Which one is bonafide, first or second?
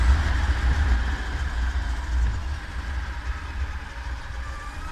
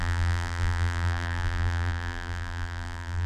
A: first